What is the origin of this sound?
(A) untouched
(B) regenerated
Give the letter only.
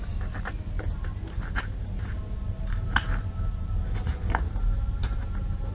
A